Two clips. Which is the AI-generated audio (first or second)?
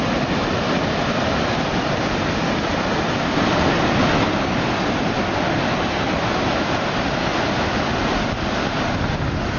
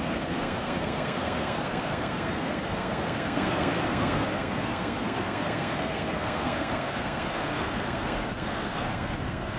second